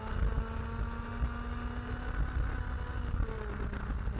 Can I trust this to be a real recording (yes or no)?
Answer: yes